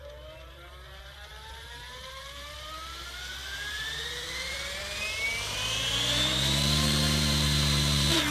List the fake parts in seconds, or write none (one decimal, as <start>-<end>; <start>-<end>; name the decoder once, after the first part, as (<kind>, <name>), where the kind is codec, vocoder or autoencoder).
0.0-8.3 (vocoder, BigVGAN v2)